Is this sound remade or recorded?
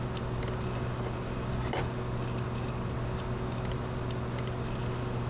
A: recorded